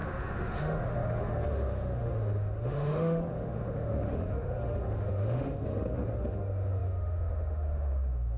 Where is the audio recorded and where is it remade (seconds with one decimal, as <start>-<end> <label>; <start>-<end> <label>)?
0.0-8.4 remade